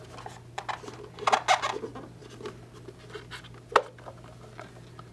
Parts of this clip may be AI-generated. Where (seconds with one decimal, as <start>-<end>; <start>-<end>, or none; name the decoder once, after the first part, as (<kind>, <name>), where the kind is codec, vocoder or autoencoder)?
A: none